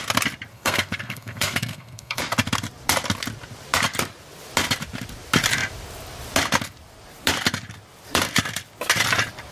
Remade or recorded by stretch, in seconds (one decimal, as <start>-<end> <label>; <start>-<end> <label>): 0.0-0.5 recorded; 0.5-2.2 remade; 2.2-9.5 recorded